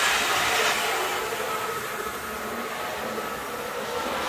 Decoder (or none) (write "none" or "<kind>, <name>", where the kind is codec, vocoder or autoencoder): none